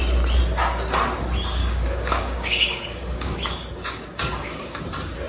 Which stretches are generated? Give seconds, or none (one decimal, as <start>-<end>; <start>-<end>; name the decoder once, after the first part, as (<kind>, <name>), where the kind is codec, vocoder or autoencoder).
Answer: 1.6-4.8 (codec, DAC)